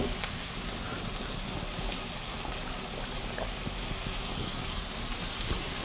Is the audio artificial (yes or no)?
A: no